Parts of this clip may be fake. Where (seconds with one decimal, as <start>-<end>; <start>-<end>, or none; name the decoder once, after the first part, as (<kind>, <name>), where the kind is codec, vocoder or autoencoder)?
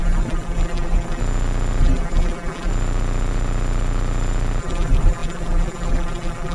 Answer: 0.0-1.2 (vocoder, BigVGAN v2); 1.8-2.7; 4.6-6.5